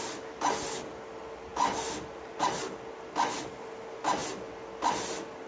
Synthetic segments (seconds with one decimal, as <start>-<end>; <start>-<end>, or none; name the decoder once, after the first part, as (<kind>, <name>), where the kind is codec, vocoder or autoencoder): none